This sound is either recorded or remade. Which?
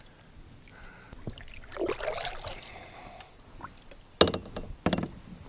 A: recorded